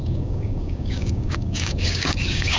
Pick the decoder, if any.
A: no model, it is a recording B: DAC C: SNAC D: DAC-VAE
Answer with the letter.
B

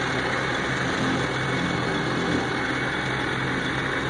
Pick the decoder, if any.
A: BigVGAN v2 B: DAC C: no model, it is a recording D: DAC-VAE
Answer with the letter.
C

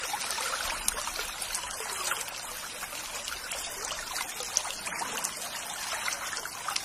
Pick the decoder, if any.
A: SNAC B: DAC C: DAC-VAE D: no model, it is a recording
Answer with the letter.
D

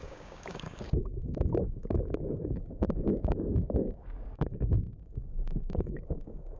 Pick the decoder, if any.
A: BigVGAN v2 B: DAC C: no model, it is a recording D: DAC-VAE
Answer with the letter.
B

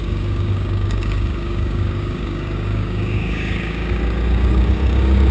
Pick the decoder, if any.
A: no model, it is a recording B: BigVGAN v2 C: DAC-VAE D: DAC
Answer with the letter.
D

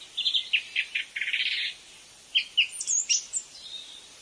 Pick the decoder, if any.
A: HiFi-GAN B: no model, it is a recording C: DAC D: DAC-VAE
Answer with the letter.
B